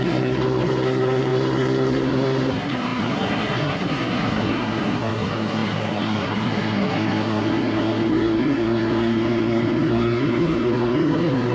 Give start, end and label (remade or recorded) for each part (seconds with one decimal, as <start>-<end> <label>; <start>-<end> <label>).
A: 0.0-11.5 remade